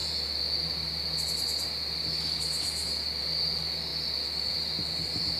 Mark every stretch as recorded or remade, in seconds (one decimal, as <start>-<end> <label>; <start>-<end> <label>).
0.0-5.4 recorded